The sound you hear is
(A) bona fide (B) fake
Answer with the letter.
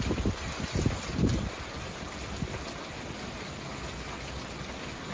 A